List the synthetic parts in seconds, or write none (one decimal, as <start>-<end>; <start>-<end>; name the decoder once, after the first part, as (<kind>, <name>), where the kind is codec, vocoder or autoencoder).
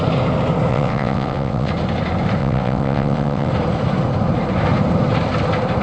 0.7-1.7 (vocoder, WaveNeXt); 2.4-3.5